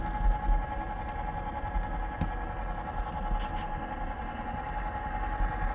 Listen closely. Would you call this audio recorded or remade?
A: recorded